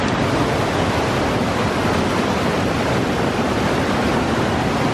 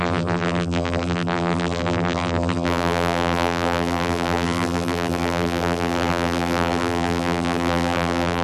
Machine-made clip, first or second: second